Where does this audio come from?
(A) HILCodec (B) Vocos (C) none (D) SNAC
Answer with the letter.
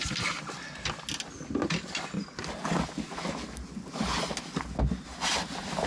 C